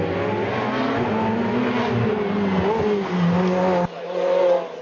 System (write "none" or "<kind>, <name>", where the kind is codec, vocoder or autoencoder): none